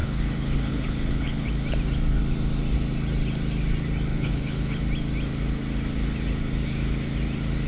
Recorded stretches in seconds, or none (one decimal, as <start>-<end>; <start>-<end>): 1.5-4.1; 4.8-7.7